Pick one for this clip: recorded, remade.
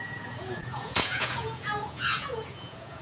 remade